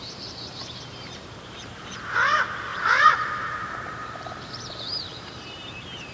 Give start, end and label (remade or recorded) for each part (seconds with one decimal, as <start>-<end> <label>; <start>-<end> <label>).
0.0-1.9 remade; 1.9-2.7 recorded; 2.7-6.1 remade